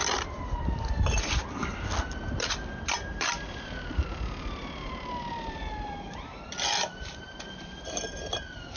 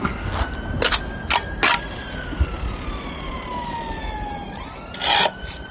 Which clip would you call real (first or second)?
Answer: second